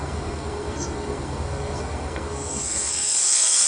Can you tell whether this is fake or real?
fake